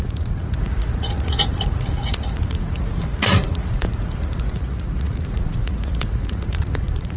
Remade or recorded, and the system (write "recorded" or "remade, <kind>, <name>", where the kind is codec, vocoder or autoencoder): remade, vocoder, Vocos